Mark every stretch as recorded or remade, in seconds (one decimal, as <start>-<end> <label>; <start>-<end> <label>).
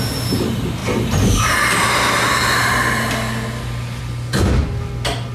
0.0-5.3 recorded